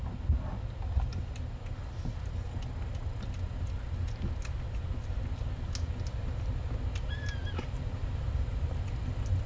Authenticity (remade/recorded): recorded